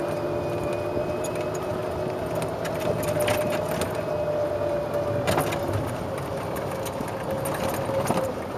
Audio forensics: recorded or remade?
recorded